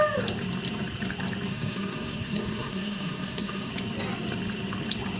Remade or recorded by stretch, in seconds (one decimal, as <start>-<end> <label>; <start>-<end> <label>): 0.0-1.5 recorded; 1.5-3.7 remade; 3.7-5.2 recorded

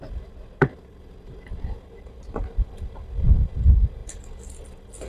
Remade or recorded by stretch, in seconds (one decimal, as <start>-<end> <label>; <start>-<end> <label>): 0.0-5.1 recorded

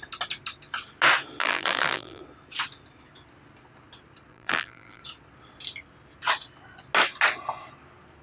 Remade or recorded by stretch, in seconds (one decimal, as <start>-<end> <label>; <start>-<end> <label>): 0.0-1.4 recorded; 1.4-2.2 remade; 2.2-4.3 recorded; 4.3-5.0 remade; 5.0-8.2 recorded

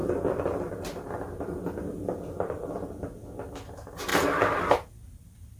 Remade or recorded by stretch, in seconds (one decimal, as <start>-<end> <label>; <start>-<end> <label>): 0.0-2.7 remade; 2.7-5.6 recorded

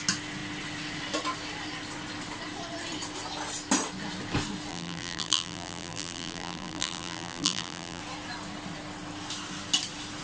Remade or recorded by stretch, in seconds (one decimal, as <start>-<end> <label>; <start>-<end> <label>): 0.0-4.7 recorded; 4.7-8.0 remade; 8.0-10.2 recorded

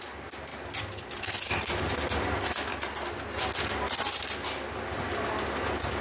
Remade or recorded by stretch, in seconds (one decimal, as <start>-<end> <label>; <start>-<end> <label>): 0.0-6.0 recorded

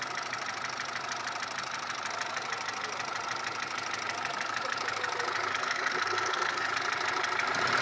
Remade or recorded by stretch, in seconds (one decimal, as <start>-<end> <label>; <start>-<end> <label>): 0.0-5.5 recorded; 5.5-6.7 remade; 6.7-7.8 recorded